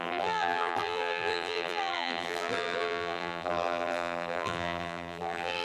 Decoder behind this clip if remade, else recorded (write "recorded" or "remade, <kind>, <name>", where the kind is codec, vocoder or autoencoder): remade, vocoder, BigVGAN v2